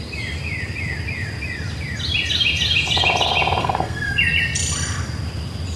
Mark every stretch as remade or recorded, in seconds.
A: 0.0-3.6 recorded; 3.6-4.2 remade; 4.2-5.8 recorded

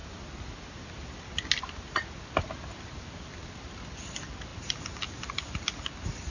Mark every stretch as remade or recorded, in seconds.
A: 0.0-6.3 recorded

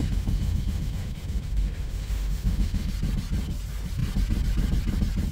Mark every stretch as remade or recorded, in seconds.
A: 0.0-2.9 remade; 2.9-5.3 recorded

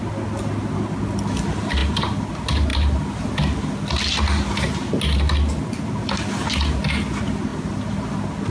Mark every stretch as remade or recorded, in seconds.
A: 0.0-8.5 recorded

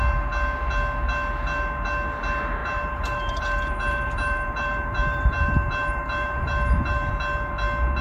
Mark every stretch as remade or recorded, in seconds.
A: 0.0-2.6 recorded; 2.6-7.1 remade; 7.1-8.0 recorded

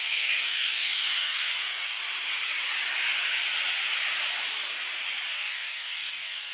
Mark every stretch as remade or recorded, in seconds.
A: 0.0-2.0 remade; 2.0-5.3 recorded; 5.3-6.5 remade

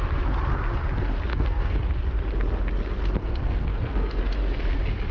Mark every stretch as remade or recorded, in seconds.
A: 0.0-1.3 recorded; 1.3-1.8 remade; 1.8-3.2 recorded; 3.2-4.2 remade; 4.2-5.1 recorded